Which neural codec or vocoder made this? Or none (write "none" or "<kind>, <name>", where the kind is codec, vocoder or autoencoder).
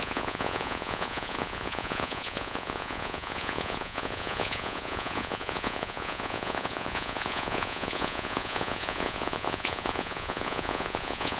vocoder, Vocos